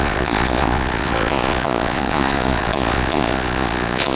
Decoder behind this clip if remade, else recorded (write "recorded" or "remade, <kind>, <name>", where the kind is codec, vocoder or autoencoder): remade, vocoder, Vocos